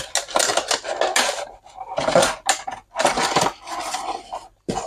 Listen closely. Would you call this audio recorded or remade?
recorded